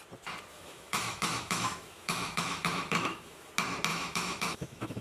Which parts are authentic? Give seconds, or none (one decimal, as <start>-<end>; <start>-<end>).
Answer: 0.0-0.5; 3.5-3.9